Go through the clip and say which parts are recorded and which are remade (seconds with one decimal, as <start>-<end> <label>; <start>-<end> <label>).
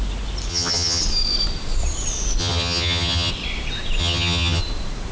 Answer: 0.0-0.5 recorded; 0.5-1.0 remade; 1.0-2.4 recorded; 2.4-3.3 remade; 3.3-4.0 recorded; 4.0-4.6 remade; 4.6-5.1 recorded